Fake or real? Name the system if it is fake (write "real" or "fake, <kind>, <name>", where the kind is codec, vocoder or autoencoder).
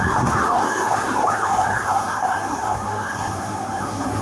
fake, codec, SNAC